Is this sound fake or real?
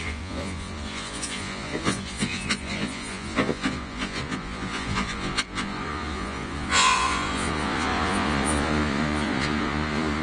fake